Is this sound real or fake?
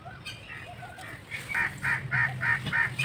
real